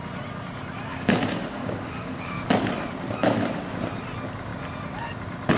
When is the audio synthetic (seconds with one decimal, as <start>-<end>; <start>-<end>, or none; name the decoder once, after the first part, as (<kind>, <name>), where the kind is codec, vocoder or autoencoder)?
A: 0.9-2.5 (codec, DAC)